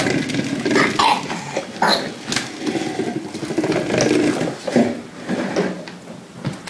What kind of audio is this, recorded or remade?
recorded